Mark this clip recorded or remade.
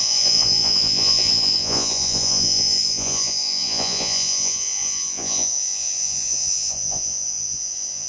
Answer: remade